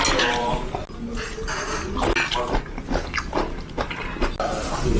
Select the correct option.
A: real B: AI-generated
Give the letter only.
A